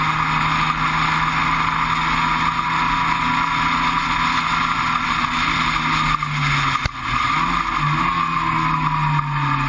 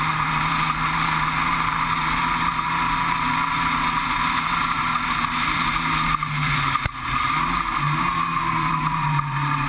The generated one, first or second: second